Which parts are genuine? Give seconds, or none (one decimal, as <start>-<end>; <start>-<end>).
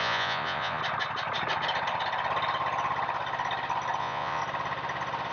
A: 0.8-4.0; 4.4-5.3